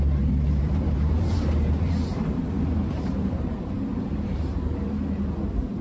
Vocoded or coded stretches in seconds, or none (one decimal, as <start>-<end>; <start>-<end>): 0.0-5.8